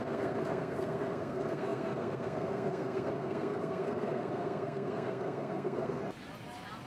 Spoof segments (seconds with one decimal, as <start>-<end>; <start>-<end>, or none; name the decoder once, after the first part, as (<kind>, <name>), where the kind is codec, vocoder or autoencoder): 0.0-6.0 (codec, SNAC)